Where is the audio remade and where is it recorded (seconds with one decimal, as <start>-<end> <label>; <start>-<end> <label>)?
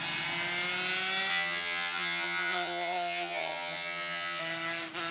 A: 0.0-1.3 recorded; 1.3-4.4 remade; 4.4-5.1 recorded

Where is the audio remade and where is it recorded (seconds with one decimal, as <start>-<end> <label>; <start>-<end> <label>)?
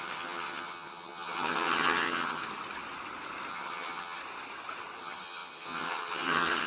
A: 0.0-2.4 remade; 2.4-3.5 recorded; 3.5-4.2 remade; 4.2-5.0 recorded; 5.0-6.7 remade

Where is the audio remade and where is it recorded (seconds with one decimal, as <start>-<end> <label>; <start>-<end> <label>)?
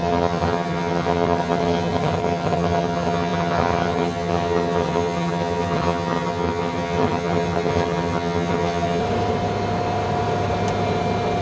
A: 0.0-9.0 remade; 9.0-11.4 recorded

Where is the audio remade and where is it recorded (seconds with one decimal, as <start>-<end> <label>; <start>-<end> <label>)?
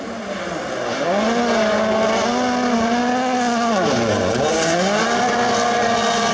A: 0.0-6.3 recorded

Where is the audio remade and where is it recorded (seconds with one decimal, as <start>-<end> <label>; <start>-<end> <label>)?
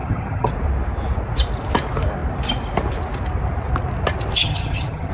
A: 0.0-0.5 remade; 0.5-4.4 recorded; 4.4-5.1 remade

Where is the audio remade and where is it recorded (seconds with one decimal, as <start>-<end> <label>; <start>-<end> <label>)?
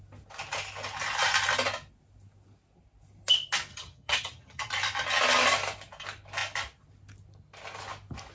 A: 0.0-3.7 recorded; 3.7-4.7 remade; 4.7-8.3 recorded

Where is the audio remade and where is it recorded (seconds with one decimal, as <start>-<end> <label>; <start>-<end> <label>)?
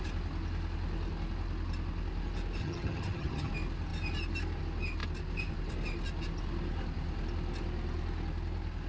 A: 0.0-2.6 recorded; 2.6-3.5 remade; 3.5-8.9 recorded